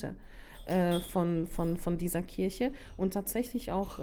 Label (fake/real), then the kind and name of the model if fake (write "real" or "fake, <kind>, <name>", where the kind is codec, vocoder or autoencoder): real